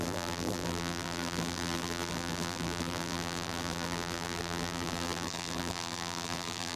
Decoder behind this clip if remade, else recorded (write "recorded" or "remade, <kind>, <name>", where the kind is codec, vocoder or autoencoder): remade, vocoder, BigVGAN v2